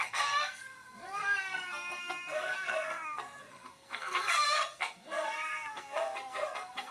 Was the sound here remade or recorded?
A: remade